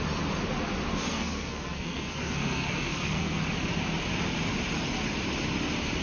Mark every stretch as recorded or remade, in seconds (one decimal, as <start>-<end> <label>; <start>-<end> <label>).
0.0-1.0 recorded; 1.0-3.4 remade; 3.4-6.0 recorded